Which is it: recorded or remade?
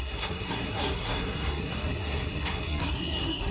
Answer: remade